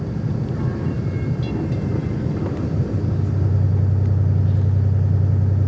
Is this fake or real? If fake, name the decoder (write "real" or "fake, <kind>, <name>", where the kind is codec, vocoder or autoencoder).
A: real